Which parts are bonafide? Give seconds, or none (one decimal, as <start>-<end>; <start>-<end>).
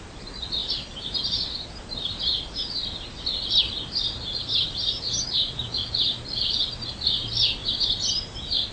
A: 0.0-8.7